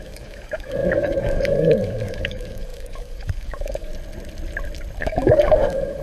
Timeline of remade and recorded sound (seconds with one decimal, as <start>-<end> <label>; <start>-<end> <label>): 0.0-3.9 remade; 3.9-5.0 recorded; 5.0-6.0 remade